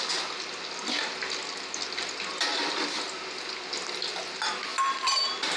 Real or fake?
real